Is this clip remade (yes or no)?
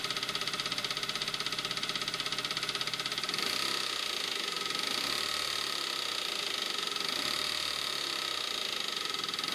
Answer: yes